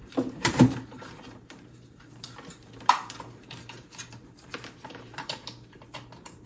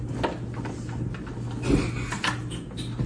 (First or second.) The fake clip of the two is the first